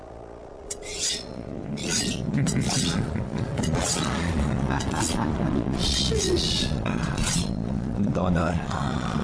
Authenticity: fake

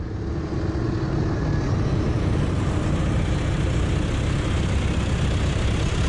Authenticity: real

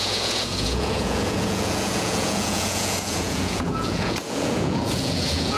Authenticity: fake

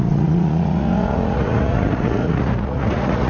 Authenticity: fake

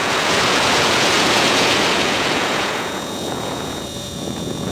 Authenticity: fake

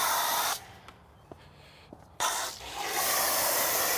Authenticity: real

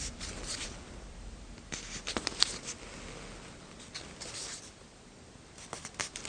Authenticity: real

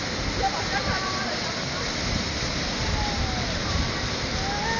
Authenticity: real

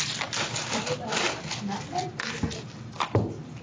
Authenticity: real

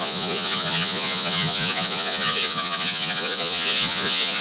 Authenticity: fake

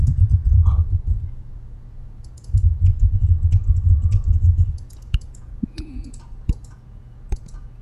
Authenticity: fake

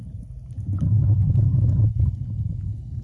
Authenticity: real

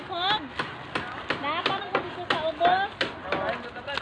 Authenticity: real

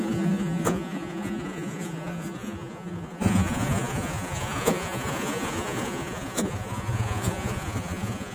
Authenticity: fake